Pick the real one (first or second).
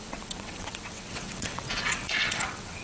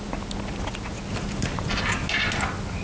second